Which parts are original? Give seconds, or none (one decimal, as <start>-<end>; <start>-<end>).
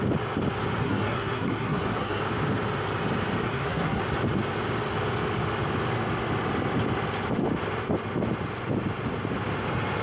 0.0-0.8; 2.2-3.4; 4.0-10.0